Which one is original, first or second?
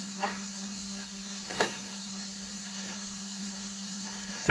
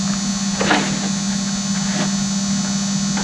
second